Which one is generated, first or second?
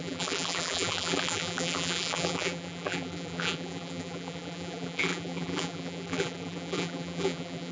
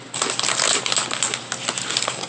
first